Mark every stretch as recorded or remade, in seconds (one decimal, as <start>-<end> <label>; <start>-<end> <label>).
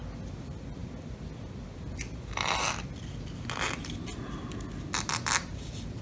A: 0.0-6.0 recorded